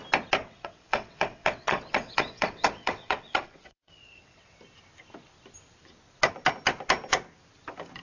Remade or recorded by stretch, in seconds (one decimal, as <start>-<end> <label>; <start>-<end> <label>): 0.0-0.4 recorded; 0.4-4.6 remade; 4.6-8.0 recorded